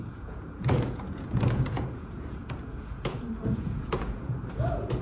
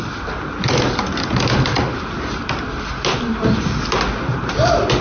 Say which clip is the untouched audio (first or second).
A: second